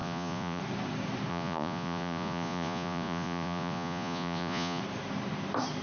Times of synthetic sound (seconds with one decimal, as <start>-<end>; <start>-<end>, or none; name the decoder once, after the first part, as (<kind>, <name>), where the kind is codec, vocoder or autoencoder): 0.0-0.6 (vocoder, Vocos); 1.3-4.8